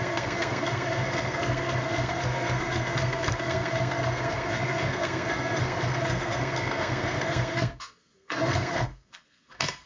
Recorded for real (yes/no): no